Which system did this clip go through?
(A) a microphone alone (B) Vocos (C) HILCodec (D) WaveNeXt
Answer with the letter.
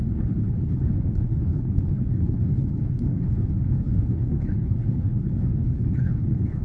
C